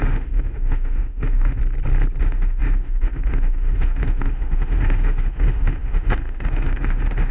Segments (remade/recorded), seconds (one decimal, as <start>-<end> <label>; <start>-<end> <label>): 0.0-1.6 remade; 1.6-2.2 recorded; 2.2-7.3 remade